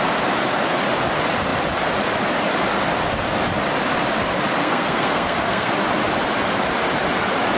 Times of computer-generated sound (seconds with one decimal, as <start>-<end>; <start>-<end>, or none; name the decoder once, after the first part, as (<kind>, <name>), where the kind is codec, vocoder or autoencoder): 4.6-5.7 (codec, SNAC)

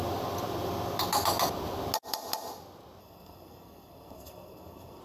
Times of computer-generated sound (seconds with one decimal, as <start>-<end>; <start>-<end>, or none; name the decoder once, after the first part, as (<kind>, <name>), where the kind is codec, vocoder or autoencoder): 3.0-5.0 (codec, SNAC)

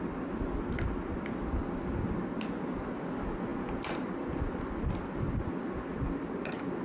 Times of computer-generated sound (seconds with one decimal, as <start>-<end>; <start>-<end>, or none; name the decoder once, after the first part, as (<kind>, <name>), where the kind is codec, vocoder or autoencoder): none

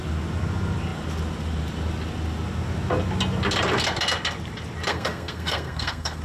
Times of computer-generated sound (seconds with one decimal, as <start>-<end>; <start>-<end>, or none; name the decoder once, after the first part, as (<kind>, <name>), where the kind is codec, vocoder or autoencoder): 4.9-6.2 (codec, SNAC)

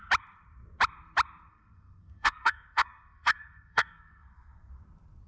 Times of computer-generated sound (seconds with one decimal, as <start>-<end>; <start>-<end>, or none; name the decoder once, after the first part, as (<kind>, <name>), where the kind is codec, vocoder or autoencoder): 1.5-4.7 (codec, SNAC)

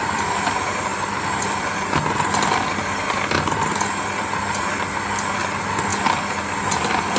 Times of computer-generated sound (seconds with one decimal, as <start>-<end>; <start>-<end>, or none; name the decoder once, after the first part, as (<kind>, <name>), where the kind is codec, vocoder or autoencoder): none

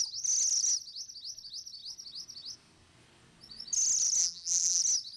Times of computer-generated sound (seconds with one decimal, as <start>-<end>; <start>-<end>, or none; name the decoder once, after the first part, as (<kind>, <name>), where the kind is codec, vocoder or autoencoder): 4.2-4.8 (vocoder, BigVGAN v2)

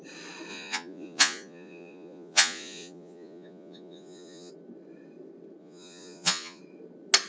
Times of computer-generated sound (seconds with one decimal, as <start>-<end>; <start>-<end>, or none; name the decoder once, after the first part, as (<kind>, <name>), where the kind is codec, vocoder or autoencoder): 0.5-4.5 (vocoder, Vocos); 5.6-6.6